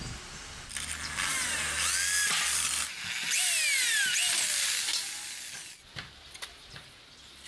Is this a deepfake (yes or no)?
no